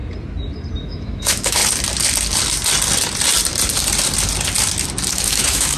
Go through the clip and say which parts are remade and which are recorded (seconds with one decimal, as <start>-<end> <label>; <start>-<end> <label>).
0.0-0.8 recorded; 0.8-1.6 remade; 1.6-5.1 recorded; 5.1-5.8 remade